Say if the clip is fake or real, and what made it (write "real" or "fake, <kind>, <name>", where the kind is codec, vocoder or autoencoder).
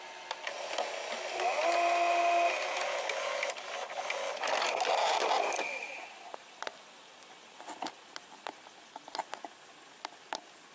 real